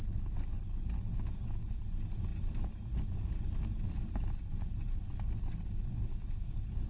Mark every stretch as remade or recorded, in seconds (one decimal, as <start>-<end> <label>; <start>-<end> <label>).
0.0-6.9 recorded